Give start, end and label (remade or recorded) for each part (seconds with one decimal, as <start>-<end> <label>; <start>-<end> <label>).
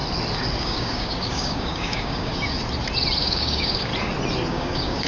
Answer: 0.0-0.6 recorded; 0.6-2.3 remade; 2.3-3.2 recorded; 3.2-3.9 remade; 3.9-4.5 recorded; 4.5-5.1 remade